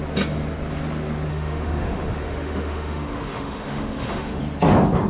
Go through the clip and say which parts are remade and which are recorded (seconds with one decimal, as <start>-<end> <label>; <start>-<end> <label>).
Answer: 0.0-1.3 recorded; 1.3-4.4 remade; 4.4-5.1 recorded